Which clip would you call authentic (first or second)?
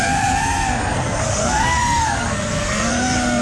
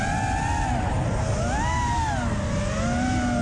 second